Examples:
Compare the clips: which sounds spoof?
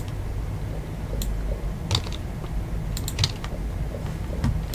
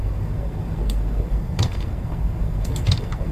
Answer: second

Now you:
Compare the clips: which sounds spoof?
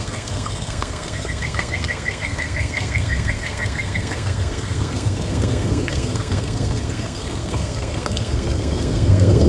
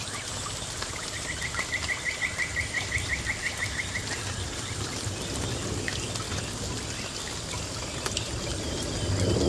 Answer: first